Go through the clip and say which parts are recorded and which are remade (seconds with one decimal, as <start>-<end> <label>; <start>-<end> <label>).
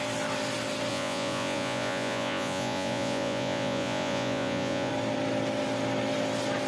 0.0-0.9 recorded; 0.9-4.9 remade; 4.9-6.7 recorded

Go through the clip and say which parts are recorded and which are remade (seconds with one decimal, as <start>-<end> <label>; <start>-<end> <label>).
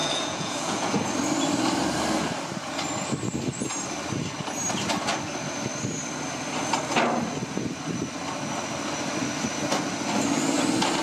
0.0-0.9 remade; 0.9-11.0 recorded